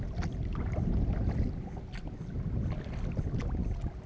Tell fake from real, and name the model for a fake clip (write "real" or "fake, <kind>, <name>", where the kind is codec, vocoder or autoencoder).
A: real